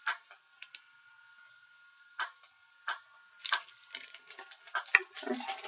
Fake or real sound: real